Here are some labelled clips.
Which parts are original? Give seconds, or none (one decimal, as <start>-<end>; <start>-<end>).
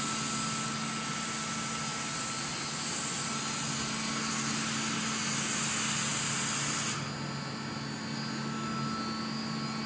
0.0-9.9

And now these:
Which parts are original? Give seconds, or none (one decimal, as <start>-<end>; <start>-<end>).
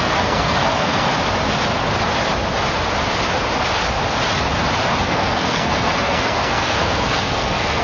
1.1-5.0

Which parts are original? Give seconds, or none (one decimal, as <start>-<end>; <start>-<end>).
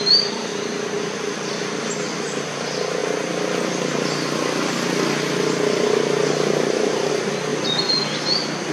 0.0-8.7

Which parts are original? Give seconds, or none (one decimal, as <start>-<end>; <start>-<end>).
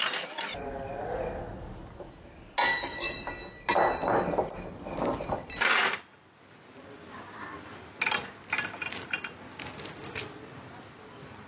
0.0-2.7; 3.3-11.5